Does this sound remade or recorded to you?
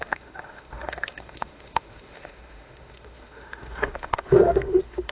remade